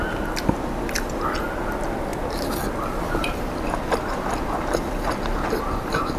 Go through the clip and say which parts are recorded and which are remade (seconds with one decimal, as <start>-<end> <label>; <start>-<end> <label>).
0.0-6.2 recorded